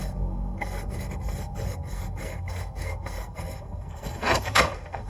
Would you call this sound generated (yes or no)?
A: yes